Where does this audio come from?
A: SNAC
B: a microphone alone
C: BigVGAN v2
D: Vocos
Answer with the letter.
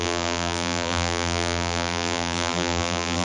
C